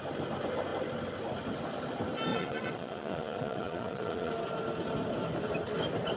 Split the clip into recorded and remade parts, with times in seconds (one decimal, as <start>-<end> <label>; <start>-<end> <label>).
0.0-2.3 recorded; 2.3-4.3 remade; 4.3-6.2 recorded